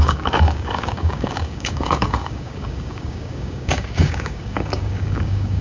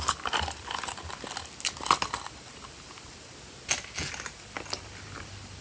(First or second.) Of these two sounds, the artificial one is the first